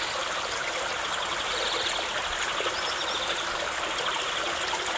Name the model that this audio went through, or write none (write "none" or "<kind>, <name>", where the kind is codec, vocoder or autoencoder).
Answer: none